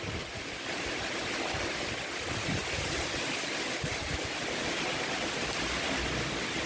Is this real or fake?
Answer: real